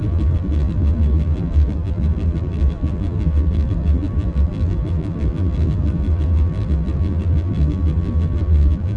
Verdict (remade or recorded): remade